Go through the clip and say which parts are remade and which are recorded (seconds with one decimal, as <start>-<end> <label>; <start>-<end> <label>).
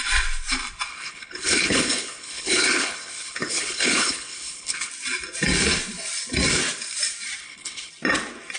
0.0-0.9 recorded; 0.9-4.9 remade; 4.9-7.4 recorded; 7.4-7.9 remade; 7.9-8.6 recorded